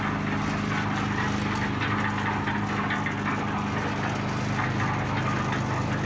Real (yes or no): yes